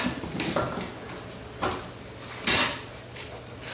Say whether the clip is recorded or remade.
recorded